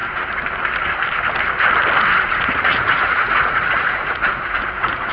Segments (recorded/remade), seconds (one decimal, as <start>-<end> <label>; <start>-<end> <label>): 0.0-2.2 recorded; 2.2-5.1 remade